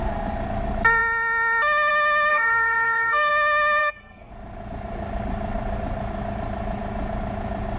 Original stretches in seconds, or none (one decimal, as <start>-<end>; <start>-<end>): 0.0-2.3; 3.3-3.8; 4.3-7.8